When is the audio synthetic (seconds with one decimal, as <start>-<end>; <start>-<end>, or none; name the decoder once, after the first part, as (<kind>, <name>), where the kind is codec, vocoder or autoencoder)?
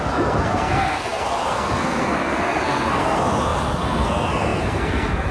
0.0-5.3 (codec, SNAC)